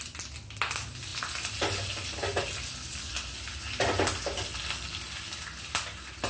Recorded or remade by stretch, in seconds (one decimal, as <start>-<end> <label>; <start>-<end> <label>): 0.0-6.3 recorded